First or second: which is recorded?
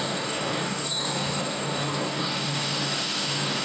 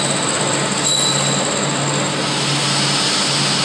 second